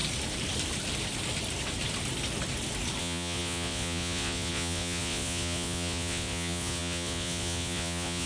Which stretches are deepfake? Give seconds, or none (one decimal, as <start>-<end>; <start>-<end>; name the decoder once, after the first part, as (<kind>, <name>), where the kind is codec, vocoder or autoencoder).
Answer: 3.0-8.3 (vocoder, Vocos)